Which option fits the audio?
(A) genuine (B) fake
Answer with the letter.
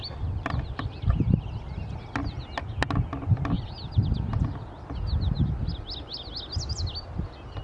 A